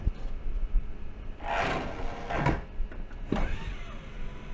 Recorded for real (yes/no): yes